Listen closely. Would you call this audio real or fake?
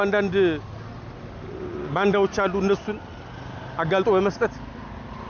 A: real